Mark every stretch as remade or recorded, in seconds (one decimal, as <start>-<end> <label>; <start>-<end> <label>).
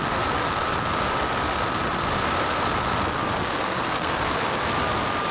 0.0-3.6 recorded; 3.6-4.1 remade; 4.1-5.3 recorded